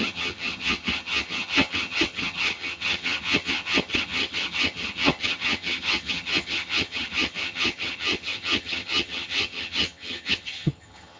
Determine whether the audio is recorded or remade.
remade